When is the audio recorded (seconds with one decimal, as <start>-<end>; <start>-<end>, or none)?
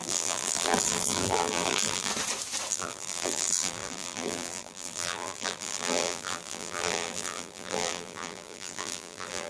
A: 2.1-2.7